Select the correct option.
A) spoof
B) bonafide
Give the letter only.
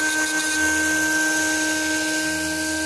B